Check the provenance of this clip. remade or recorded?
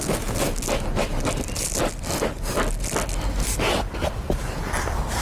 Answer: recorded